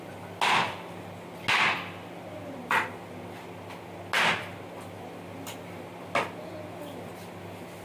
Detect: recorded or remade recorded